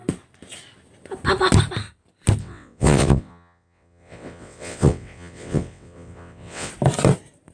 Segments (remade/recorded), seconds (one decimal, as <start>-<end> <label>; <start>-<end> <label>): 0.0-2.4 recorded; 2.4-6.7 remade; 6.7-7.5 recorded

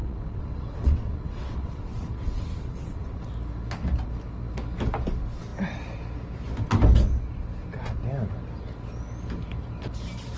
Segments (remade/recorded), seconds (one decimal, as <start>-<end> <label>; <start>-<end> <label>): 0.0-3.3 remade; 3.3-10.4 recorded